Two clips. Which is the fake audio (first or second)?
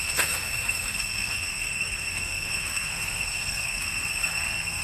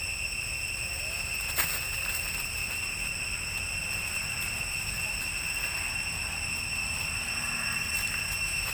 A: first